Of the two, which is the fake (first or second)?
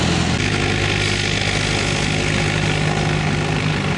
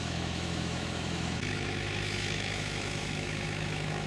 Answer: second